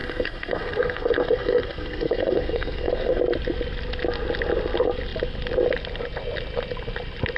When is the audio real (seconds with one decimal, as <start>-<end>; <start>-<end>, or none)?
3.2-7.4